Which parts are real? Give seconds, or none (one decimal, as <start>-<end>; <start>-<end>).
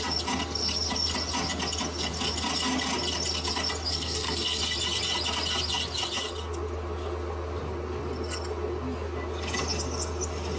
0.0-3.9; 4.6-10.6